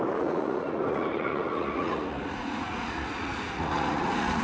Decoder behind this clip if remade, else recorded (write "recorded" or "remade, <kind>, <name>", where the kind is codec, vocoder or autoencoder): remade, vocoder, Vocos